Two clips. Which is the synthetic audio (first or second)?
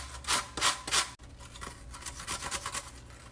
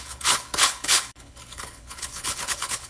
second